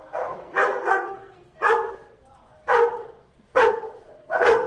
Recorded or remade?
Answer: remade